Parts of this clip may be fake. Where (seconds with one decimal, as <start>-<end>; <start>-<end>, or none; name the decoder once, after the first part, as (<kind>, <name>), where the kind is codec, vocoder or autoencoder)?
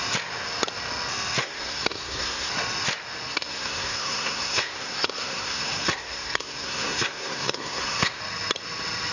1.4-2.5 (codec, SNAC); 3.3-8.2